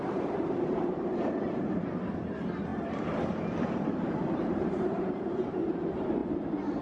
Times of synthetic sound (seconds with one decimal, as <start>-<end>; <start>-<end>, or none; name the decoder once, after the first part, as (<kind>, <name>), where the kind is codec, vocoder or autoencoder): 0.0-2.7 (vocoder, BigVGAN v2); 3.7-6.8